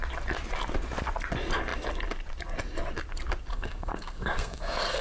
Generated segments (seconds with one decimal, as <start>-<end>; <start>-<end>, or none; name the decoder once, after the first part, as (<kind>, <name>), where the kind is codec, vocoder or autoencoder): 3.5-5.0 (codec, SNAC)